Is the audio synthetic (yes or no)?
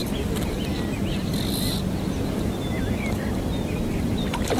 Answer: no